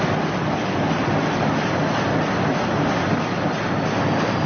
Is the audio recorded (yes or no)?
yes